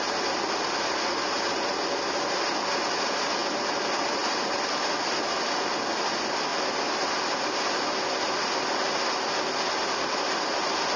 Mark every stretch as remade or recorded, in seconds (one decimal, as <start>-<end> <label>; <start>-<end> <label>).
0.0-11.0 recorded